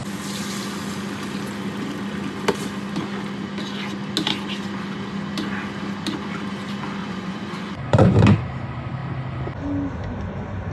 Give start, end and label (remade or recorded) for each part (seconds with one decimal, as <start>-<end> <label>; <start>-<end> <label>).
0.0-7.0 recorded; 7.0-8.1 remade; 8.1-10.7 recorded